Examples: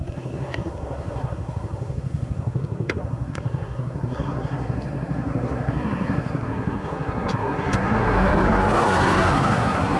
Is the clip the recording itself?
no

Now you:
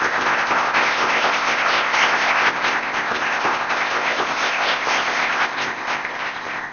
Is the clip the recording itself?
no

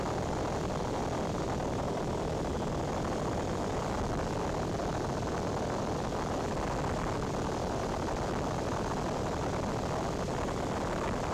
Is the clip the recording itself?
yes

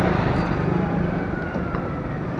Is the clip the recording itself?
yes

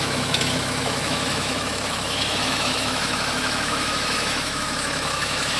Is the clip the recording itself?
no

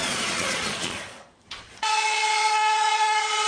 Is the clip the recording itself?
no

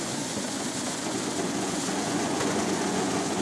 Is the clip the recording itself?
no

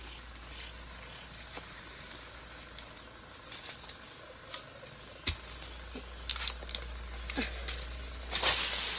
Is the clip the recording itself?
yes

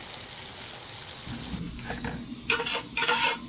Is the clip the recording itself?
yes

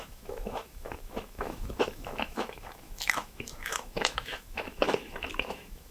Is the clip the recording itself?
no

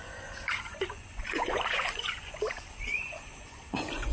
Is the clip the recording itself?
no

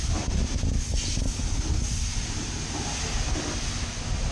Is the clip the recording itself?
yes